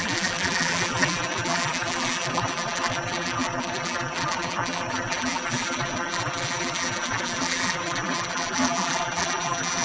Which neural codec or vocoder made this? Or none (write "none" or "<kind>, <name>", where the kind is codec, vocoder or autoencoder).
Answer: vocoder, BigVGAN v2